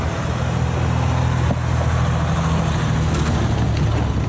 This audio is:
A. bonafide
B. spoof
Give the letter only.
A